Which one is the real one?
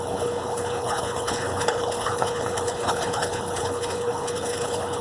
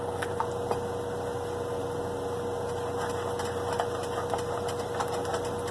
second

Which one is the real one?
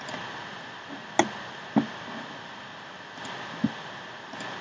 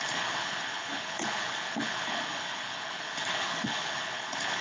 first